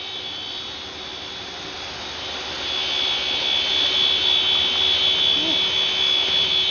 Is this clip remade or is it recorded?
recorded